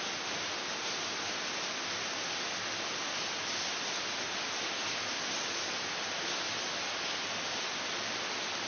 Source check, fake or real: real